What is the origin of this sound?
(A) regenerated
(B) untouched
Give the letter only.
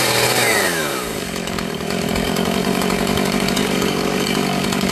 A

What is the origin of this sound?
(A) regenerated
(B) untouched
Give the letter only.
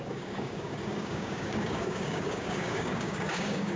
A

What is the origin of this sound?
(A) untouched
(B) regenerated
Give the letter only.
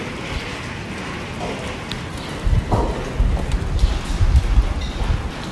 A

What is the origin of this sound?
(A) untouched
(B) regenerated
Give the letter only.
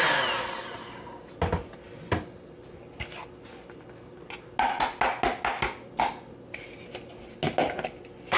A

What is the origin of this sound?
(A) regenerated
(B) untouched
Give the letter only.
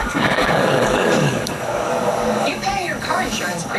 A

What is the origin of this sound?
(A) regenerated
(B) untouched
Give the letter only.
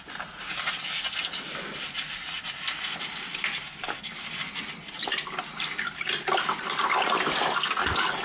B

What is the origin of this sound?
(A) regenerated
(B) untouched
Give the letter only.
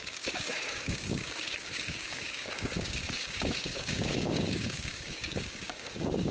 A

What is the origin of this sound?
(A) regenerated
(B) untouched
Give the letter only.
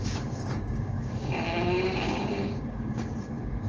A